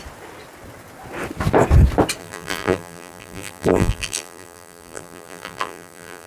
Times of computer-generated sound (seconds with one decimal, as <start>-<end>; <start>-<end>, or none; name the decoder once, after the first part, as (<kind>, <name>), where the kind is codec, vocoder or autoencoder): 2.2-6.3 (vocoder, BigVGAN v2)